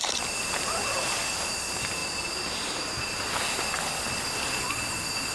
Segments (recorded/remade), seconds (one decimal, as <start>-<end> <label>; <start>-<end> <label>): 0.0-5.3 recorded